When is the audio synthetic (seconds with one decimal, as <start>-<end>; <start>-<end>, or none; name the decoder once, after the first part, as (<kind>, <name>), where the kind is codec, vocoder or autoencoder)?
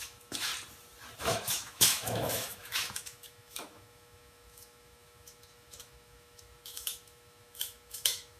0.0-0.5 (autoencoder, DAC-VAE); 1.2-8.4